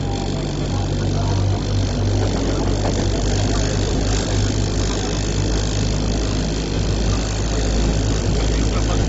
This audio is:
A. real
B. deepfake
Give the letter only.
A